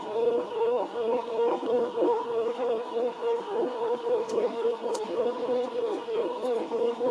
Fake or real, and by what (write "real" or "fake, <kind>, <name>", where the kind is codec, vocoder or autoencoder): fake, codec, SNAC